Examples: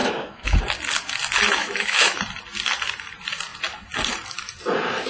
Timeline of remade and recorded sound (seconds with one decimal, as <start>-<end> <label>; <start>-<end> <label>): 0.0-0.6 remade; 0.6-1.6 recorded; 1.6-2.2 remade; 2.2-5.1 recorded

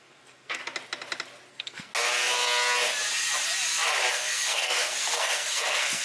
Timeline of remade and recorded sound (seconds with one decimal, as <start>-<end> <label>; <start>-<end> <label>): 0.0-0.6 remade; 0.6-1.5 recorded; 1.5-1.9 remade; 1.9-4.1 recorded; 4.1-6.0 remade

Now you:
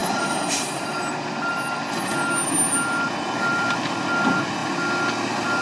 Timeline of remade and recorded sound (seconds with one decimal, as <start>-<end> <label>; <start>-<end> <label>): 0.0-1.1 remade; 1.1-5.6 recorded